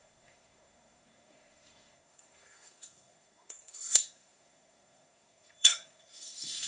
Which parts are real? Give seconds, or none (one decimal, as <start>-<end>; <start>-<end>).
none